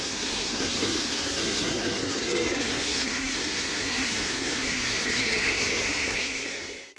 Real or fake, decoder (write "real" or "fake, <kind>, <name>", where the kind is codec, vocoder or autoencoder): fake, codec, SNAC